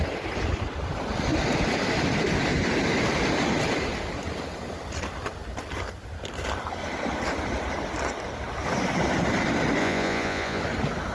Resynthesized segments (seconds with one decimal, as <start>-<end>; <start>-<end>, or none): 9.8-10.6